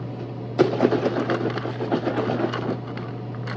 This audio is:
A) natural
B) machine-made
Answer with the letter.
A